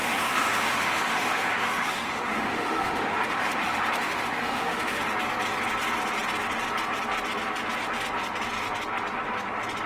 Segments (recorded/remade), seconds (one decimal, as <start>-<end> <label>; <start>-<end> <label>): 0.0-5.0 remade; 5.0-9.9 recorded